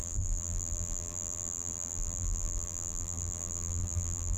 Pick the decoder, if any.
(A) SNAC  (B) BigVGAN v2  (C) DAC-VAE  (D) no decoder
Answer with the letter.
B